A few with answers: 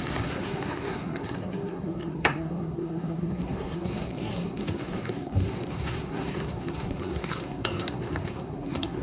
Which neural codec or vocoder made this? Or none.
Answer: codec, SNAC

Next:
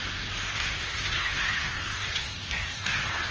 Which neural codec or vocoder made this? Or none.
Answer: codec, SNAC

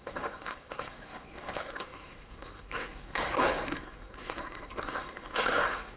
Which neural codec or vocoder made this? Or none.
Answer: codec, SNAC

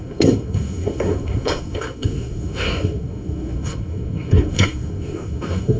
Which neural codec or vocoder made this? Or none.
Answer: codec, SNAC